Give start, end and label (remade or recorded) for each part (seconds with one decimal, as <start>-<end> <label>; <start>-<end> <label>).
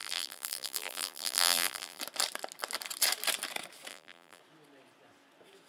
0.0-2.0 remade; 2.0-3.9 recorded; 3.9-4.4 remade; 4.4-5.7 recorded